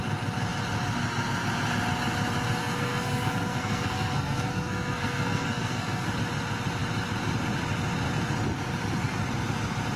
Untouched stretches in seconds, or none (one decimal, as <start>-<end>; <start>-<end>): 0.0-2.6; 6.1-10.0